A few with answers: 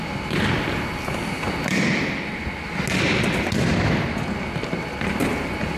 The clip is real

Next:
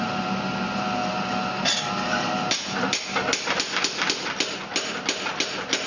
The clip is real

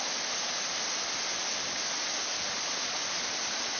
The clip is real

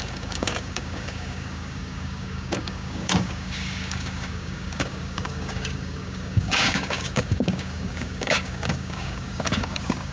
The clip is fake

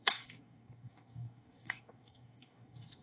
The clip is fake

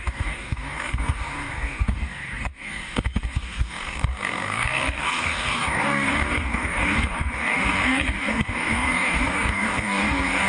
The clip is fake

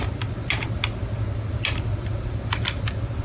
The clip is real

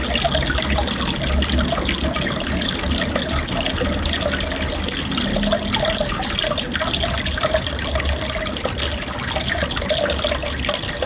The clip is real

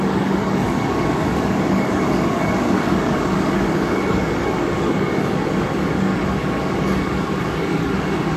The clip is fake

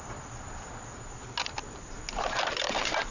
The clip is real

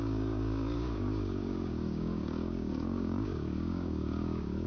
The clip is fake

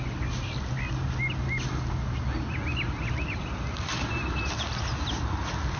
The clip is real